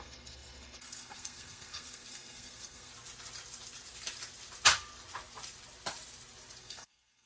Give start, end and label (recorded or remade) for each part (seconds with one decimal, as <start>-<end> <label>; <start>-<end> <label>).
0.0-2.9 remade; 2.9-6.6 recorded; 6.6-7.3 remade